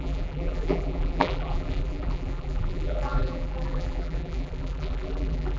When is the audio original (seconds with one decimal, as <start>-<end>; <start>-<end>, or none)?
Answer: none